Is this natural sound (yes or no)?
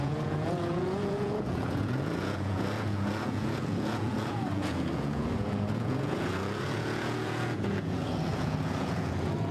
no